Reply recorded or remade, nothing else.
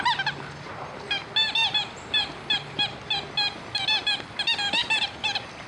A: recorded